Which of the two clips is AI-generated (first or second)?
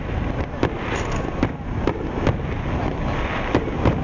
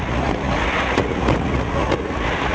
second